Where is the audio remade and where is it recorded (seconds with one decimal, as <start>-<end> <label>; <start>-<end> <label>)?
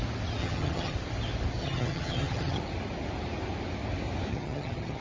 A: 0.0-0.4 recorded; 0.4-0.9 remade; 0.9-1.6 recorded; 1.6-2.6 remade; 2.6-4.3 recorded; 4.3-5.0 remade